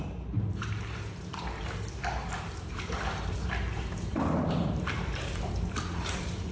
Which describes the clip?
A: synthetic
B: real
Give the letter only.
A